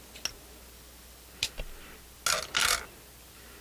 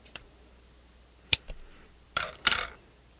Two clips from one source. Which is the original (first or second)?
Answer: first